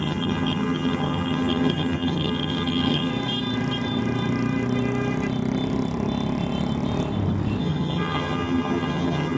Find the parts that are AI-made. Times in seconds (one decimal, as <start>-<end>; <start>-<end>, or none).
0.0-3.1; 7.6-9.4